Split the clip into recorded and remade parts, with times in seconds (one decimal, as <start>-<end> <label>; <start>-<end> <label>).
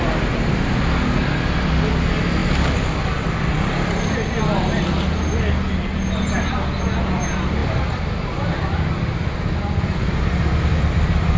0.0-11.4 recorded